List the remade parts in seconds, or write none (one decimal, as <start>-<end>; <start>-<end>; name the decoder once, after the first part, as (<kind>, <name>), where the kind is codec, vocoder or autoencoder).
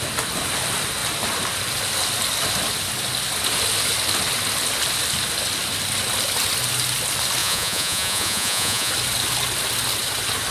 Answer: 7.4-8.9 (vocoder, Vocos)